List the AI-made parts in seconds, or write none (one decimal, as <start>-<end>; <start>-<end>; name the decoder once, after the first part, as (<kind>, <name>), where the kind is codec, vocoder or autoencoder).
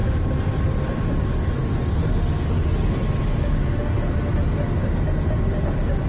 none